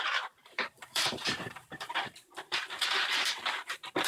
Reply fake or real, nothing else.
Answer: fake